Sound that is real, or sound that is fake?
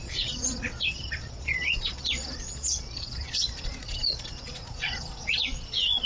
fake